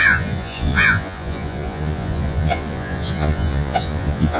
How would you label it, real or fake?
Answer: fake